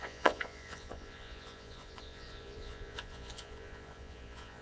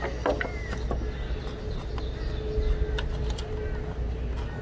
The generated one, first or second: first